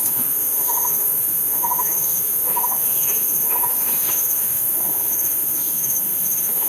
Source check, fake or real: fake